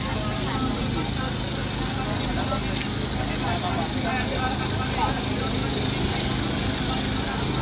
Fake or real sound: real